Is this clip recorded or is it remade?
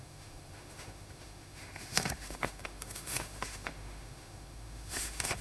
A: remade